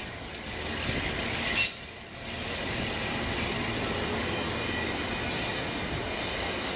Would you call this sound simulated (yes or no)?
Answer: no